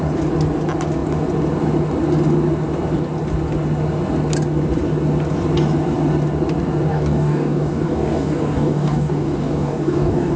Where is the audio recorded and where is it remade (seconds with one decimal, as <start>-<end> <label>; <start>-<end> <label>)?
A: 0.0-6.9 recorded; 6.9-10.4 remade